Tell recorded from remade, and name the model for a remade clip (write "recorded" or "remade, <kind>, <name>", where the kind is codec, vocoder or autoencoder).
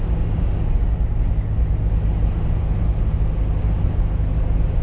recorded